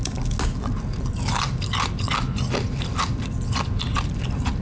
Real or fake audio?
real